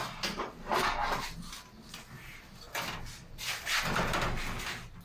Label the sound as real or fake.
real